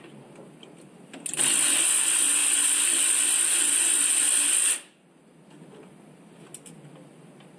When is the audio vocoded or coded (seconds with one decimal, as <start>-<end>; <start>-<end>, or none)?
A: none